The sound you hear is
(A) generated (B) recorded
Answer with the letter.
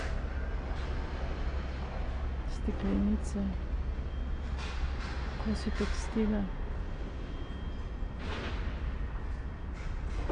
B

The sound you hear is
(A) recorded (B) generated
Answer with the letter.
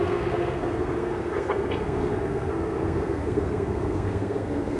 B